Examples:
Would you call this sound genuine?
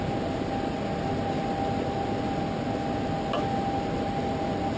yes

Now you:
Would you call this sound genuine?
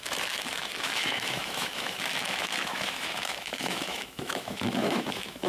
no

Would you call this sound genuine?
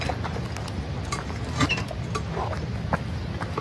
yes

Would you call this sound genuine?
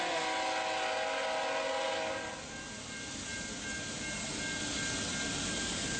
yes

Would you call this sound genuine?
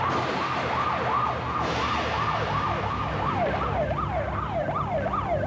yes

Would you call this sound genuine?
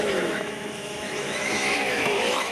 no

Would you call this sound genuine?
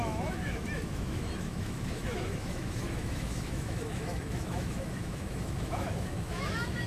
no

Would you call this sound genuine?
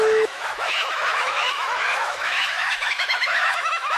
no